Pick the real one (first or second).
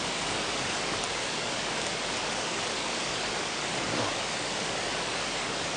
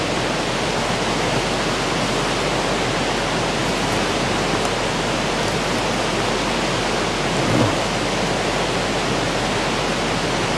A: second